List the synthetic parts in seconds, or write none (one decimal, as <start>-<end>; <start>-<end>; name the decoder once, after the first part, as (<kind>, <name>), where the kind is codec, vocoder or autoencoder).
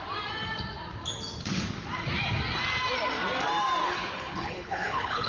3.8-5.3 (codec, HILCodec)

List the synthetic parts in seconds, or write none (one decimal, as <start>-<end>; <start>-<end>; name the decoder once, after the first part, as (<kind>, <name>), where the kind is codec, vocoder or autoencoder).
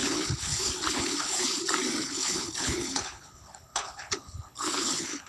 0.0-1.6 (codec, HILCodec); 2.0-5.3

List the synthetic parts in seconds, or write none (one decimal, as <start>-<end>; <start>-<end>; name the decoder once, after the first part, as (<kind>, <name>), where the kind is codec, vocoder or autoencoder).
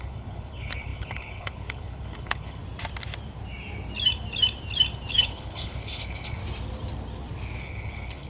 0.0-2.6 (codec, HILCodec); 5.1-6.4; 7.6-8.3